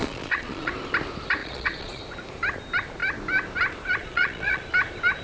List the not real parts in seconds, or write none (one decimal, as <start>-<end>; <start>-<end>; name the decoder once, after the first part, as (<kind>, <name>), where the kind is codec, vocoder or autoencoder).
0.0-0.7 (vocoder, Vocos); 1.4-2.0; 4.0-4.6